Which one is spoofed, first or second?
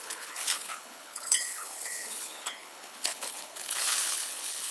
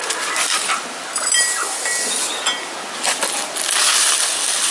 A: first